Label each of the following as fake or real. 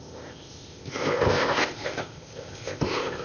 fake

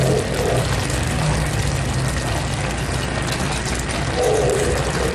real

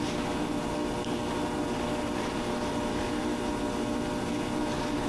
real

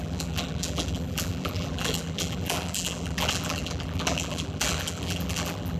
fake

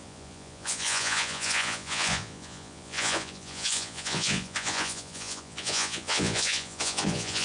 fake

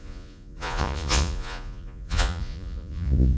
fake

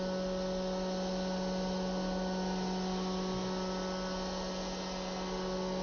real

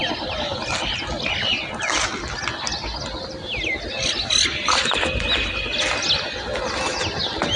real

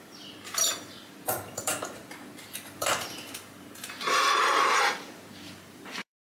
fake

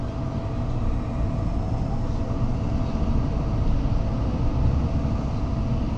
real